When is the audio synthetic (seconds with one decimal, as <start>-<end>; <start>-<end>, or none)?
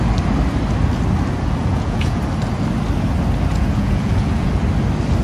1.6-2.2; 3.5-4.5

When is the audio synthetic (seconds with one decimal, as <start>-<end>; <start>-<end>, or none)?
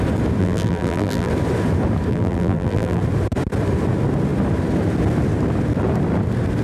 0.4-1.3; 2.1-3.0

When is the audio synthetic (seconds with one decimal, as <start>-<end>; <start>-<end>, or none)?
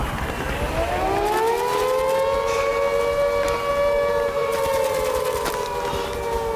none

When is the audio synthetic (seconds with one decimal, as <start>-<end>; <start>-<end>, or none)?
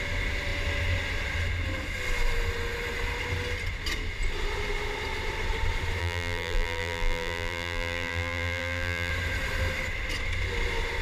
6.0-9.1